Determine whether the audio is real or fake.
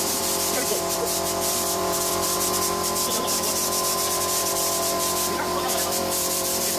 fake